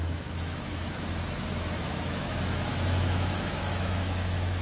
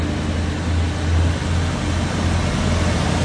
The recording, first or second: second